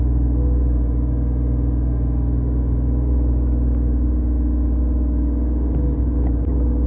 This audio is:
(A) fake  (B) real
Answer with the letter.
B